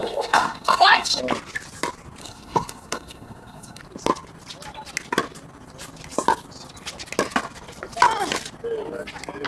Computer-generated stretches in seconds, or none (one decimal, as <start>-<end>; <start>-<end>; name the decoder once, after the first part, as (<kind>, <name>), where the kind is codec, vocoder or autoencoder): 0.0-1.2 (codec, SNAC); 2.2-3.8